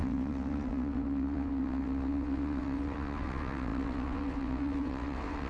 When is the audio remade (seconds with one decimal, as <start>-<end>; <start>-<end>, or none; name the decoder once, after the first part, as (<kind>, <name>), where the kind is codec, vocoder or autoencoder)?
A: 0.0-5.5 (vocoder, WaveNeXt)